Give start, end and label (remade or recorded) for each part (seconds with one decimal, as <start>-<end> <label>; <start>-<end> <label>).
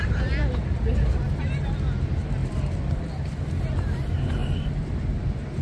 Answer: 0.0-2.4 recorded; 2.4-3.4 remade; 3.4-4.4 recorded; 4.4-5.0 remade; 5.0-5.6 recorded